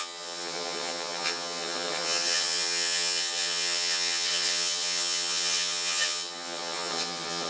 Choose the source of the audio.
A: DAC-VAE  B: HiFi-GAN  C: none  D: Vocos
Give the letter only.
B